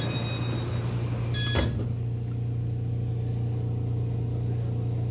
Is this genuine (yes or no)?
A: yes